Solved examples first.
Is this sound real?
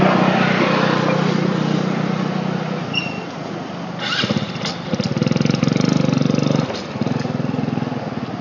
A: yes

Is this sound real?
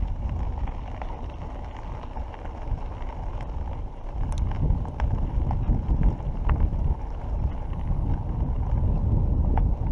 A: yes